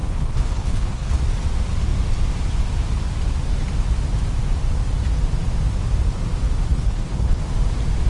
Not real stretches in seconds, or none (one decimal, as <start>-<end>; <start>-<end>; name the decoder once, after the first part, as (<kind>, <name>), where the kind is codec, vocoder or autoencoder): 0.0-1.2 (codec, HILCodec); 6.7-7.4